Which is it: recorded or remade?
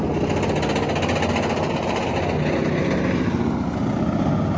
recorded